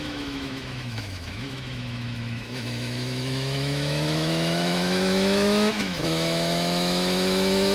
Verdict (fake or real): fake